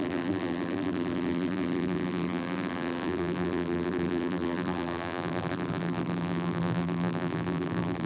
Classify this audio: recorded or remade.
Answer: remade